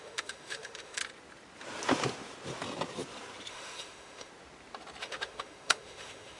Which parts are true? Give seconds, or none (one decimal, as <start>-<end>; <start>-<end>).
1.0-3.5; 4.3-5.0